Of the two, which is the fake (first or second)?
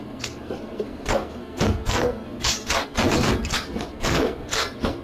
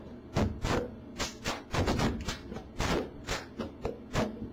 first